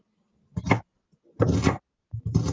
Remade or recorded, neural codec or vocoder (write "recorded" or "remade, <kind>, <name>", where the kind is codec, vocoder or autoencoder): recorded